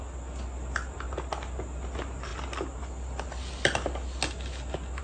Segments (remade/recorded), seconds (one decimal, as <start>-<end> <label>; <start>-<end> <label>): 0.0-5.0 recorded